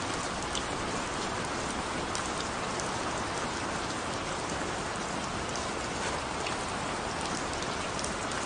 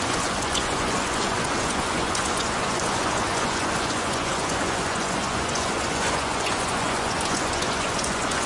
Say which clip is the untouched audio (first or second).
first